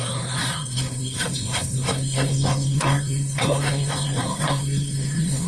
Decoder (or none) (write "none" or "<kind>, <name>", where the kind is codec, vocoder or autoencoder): codec, SNAC